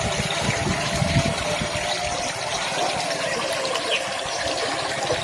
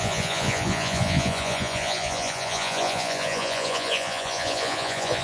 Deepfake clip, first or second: second